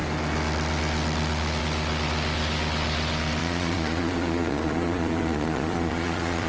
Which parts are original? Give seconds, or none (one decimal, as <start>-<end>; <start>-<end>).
0.0-3.4